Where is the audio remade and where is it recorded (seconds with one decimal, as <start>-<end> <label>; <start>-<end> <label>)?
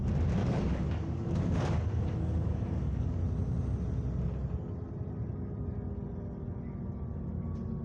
0.0-0.4 recorded; 0.4-3.2 remade; 3.2-7.8 recorded